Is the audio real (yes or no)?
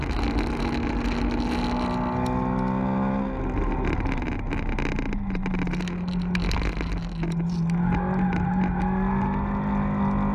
yes